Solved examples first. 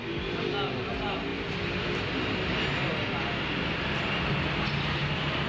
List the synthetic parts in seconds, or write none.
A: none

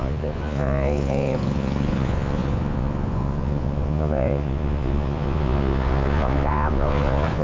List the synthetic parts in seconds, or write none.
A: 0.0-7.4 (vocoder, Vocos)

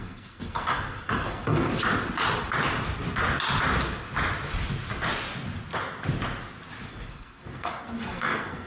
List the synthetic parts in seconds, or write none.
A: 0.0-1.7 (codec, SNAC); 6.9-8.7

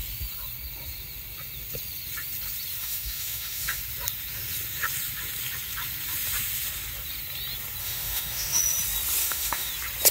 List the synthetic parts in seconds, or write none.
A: 2.8-3.8 (autoencoder, DAC-VAE); 7.8-8.6; 9.2-9.7

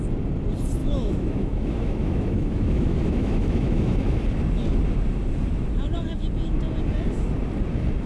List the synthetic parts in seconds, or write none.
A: 0.8-4.2 (autoencoder, DAC-VAE)